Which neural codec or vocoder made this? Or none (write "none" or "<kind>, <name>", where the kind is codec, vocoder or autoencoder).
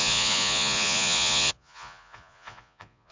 vocoder, Vocos